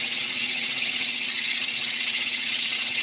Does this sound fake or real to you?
fake